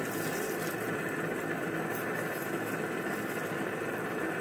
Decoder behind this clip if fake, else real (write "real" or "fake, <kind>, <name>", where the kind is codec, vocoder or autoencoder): real